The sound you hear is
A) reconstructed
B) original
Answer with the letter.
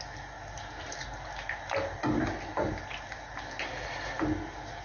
B